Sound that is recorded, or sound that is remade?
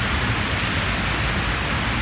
recorded